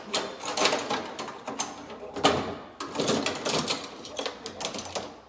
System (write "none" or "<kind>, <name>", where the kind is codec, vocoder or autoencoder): none